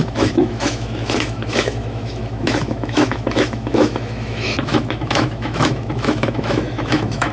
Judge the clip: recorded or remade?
remade